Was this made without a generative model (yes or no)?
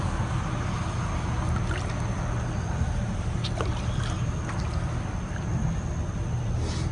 yes